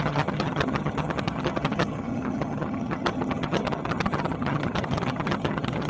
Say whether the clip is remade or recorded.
remade